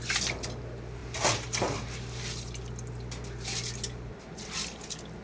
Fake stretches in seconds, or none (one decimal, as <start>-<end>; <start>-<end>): none

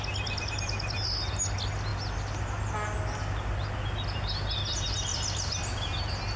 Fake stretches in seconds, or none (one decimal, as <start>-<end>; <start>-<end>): none

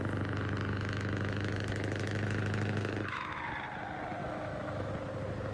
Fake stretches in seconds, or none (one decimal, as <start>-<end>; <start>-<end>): 0.7-3.5; 4.2-4.9

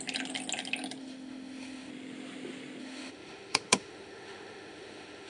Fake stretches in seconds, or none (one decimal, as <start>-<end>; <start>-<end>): 1.0-1.9; 2.8-5.3

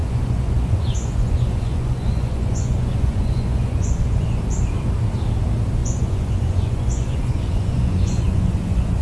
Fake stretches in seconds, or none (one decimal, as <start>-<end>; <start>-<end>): 0.0-4.4; 5.8-9.0

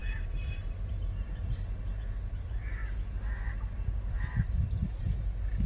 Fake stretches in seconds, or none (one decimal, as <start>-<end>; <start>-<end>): 0.0-1.3

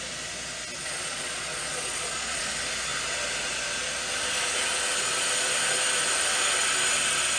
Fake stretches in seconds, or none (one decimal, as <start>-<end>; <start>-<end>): 0.8-2.4